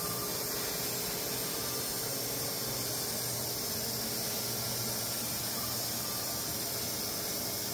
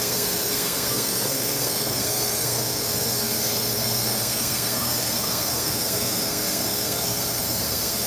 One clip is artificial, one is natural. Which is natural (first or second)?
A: first